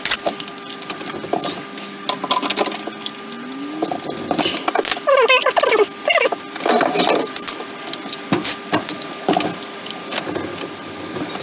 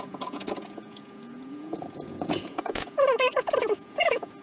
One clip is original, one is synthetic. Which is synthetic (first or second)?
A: second